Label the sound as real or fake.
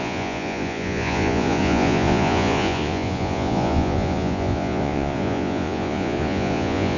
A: fake